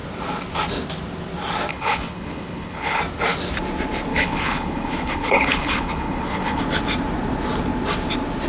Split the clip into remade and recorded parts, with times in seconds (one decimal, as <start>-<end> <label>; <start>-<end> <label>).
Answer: 0.0-1.7 recorded; 1.7-3.0 remade; 3.0-4.1 recorded; 4.1-6.6 remade; 6.6-8.5 recorded